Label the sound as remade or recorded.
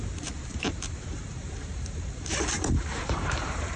remade